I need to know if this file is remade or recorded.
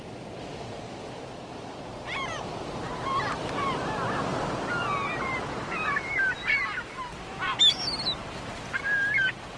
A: recorded